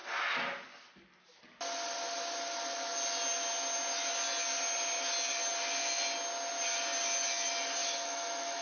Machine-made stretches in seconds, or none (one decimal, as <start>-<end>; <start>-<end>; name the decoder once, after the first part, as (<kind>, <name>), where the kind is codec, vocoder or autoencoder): 7.8-8.6 (autoencoder, DAC-VAE)